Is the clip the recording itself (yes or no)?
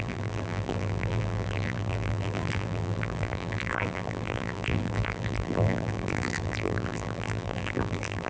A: no